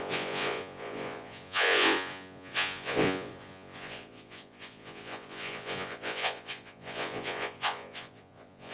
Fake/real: fake